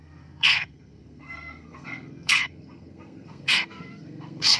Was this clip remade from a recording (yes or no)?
yes